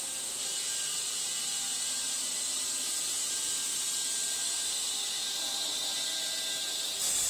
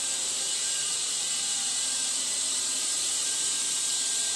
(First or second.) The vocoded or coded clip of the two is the second